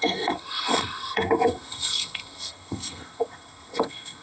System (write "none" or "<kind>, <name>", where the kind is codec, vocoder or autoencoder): codec, SNAC